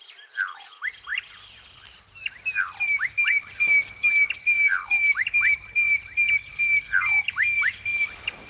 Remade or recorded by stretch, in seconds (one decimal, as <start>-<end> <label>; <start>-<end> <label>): 0.0-8.5 recorded